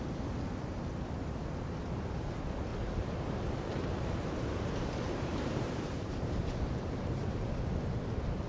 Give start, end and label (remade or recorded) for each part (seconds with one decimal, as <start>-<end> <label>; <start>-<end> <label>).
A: 0.0-2.7 recorded; 2.7-7.3 remade; 7.3-8.5 recorded